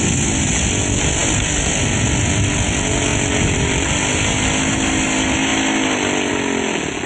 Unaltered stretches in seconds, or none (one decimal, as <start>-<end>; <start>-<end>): 0.0-7.1